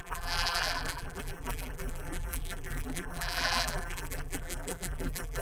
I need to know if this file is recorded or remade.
remade